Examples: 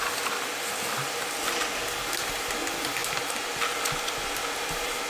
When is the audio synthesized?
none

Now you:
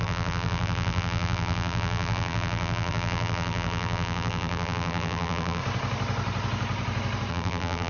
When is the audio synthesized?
0.0-5.6; 7.3-7.9

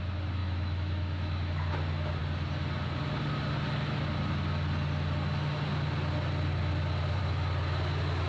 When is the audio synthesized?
0.4-1.5